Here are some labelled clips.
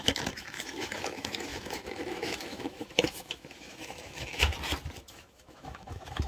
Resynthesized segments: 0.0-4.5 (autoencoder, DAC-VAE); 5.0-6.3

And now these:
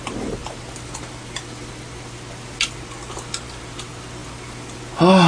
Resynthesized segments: none